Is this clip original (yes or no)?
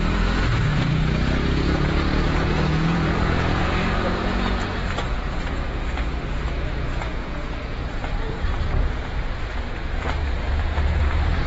no